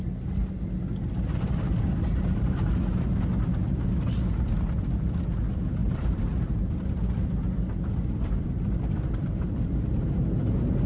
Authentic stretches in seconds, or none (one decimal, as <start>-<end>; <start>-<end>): 0.0-5.8; 10.1-10.9

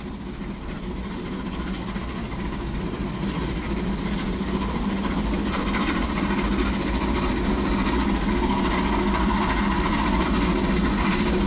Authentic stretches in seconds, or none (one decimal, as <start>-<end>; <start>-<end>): 0.0-2.2; 2.8-11.5

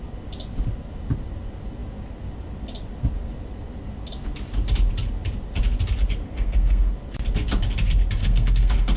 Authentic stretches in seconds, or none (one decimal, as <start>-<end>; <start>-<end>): 0.0-6.2; 6.9-8.2

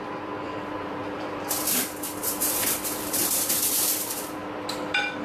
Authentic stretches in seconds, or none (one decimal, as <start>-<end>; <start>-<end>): 4.4-5.2

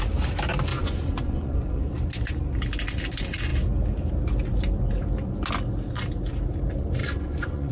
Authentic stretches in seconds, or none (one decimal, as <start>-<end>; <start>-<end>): 0.0-0.7; 1.8-7.0

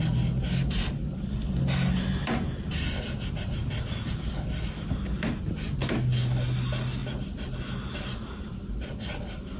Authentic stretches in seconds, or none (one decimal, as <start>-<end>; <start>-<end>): 0.0-9.6

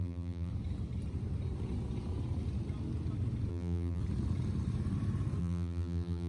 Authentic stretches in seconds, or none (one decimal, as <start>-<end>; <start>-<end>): 0.5-3.5; 4.0-5.4

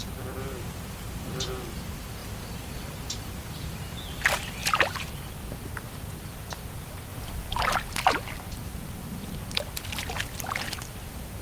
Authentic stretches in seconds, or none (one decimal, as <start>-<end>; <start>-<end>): 7.1-7.6